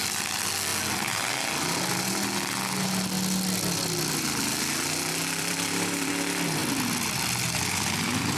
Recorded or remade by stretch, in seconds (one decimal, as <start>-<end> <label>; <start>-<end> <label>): 0.0-5.2 recorded; 5.2-6.1 remade; 6.1-6.6 recorded; 6.6-7.2 remade; 7.2-8.4 recorded